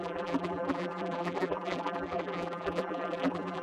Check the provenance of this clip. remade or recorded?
remade